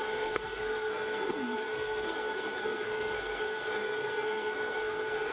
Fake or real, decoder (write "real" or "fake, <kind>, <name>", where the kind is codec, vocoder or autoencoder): fake, codec, SNAC